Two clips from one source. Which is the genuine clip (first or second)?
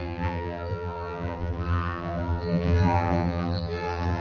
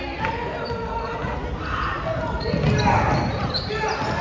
second